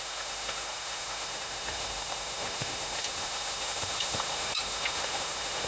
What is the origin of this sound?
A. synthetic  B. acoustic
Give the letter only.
A